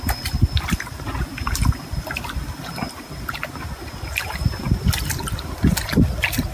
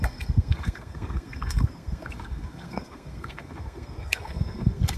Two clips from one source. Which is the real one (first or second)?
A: first